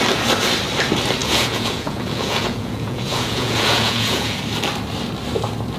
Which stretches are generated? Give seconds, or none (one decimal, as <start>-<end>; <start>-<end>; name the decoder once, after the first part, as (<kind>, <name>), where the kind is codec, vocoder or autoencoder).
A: 1.2-4.4 (vocoder, Vocos)